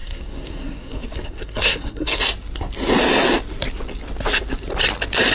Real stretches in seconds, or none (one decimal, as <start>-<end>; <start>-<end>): 2.2-5.3